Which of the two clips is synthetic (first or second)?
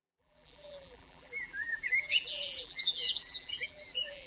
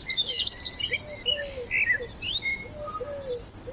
first